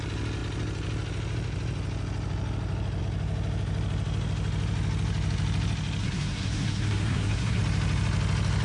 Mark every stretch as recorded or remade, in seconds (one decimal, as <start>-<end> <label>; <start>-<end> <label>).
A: 0.0-6.0 recorded; 6.0-7.6 remade; 7.6-8.6 recorded